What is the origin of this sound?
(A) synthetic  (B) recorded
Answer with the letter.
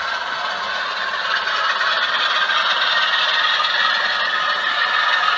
B